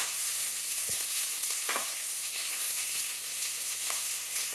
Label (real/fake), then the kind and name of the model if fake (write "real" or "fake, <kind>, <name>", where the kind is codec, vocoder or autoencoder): fake, codec, SNAC